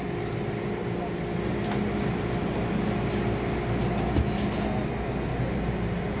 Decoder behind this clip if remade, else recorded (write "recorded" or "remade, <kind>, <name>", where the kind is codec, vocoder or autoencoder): recorded